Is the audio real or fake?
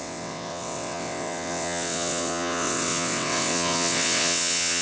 fake